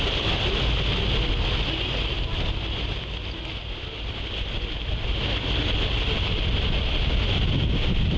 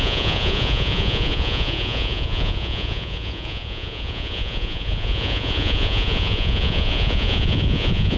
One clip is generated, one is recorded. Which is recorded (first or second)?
first